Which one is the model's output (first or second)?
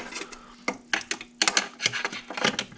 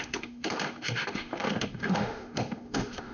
second